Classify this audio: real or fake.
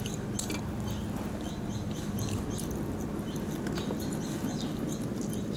real